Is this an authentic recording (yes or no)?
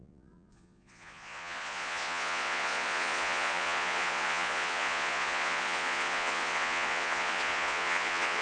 no